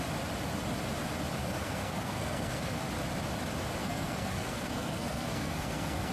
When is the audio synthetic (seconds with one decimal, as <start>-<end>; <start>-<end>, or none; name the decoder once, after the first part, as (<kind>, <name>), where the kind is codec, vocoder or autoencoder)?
1.4-2.9 (codec, SNAC); 3.8-6.1